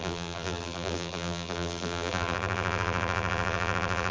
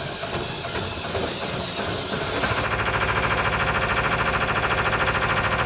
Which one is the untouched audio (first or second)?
second